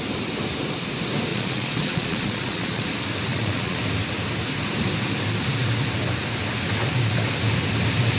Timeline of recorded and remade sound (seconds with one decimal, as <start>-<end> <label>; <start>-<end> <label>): 0.0-1.3 recorded; 1.3-2.8 remade; 2.8-3.3 recorded; 3.3-3.8 remade; 3.8-8.2 recorded